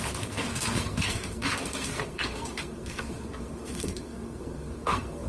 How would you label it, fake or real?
fake